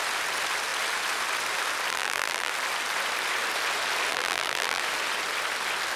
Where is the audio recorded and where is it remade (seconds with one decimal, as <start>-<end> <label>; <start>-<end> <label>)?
0.0-1.9 recorded; 1.9-2.5 remade; 2.5-4.1 recorded; 4.1-4.8 remade; 4.8-6.0 recorded